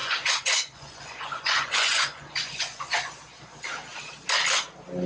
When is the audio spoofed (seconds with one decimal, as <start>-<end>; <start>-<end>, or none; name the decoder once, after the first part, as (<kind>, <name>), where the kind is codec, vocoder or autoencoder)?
0.0-3.1 (vocoder, Vocos)